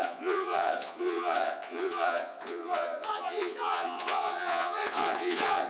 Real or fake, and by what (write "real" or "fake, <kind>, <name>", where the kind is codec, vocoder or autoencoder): fake, vocoder, Vocos